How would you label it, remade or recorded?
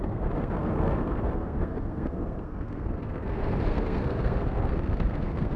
remade